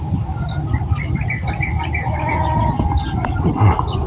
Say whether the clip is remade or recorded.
recorded